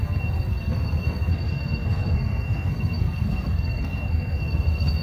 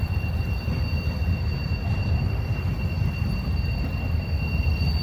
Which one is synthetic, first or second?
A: first